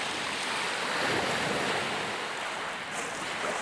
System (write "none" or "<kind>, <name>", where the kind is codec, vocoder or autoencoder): none